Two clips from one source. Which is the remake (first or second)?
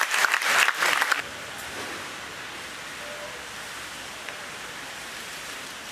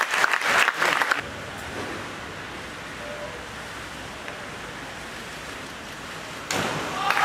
first